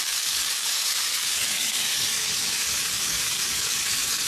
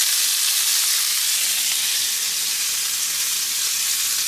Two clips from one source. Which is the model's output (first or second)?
first